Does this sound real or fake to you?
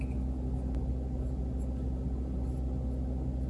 real